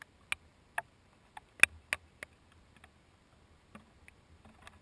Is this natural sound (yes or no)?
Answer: yes